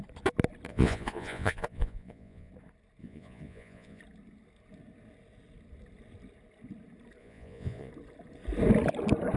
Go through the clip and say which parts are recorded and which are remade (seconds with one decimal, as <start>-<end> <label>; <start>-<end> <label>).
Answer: 0.0-0.7 recorded; 0.7-2.5 remade; 2.5-3.0 recorded; 3.0-4.0 remade; 4.0-7.2 recorded; 7.2-7.9 remade; 7.9-9.4 recorded